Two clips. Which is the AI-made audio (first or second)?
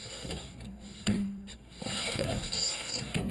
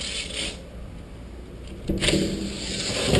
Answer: first